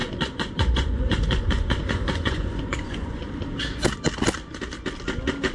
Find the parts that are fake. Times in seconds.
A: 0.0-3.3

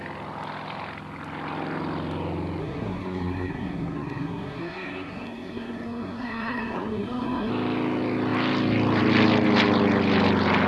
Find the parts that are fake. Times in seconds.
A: 2.6-7.5

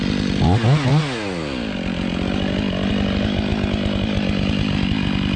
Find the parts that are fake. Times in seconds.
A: none

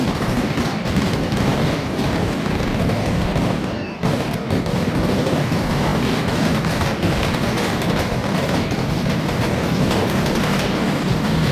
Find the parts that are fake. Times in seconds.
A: 0.0-11.5

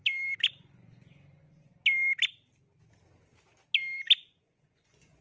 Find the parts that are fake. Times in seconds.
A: 0.5-1.7; 4.2-5.2

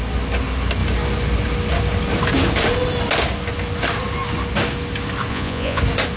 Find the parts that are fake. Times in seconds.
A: 5.3-5.8